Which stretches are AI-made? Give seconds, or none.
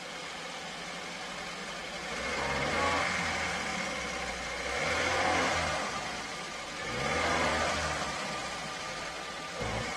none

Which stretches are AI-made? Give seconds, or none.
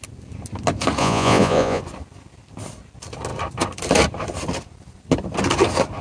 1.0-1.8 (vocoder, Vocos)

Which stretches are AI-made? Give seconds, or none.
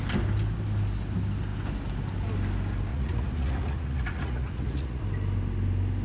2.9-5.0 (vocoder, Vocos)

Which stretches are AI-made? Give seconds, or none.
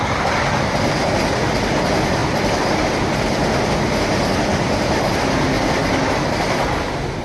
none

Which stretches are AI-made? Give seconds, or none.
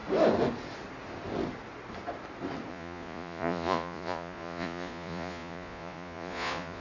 2.7-6.8 (vocoder, Vocos)